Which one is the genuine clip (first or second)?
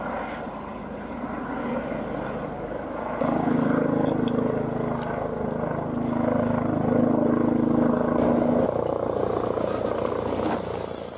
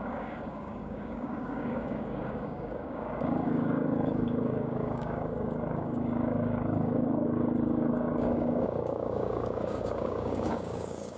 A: first